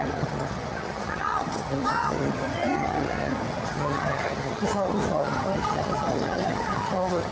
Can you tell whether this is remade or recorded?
remade